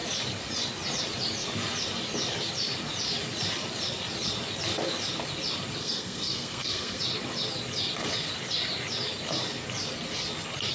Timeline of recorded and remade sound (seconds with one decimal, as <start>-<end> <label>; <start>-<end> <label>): 0.0-5.8 recorded; 5.8-7.0 remade; 7.0-10.7 recorded